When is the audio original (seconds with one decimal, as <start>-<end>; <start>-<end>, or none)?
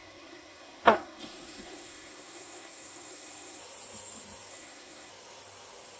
3.6-4.5; 5.1-6.0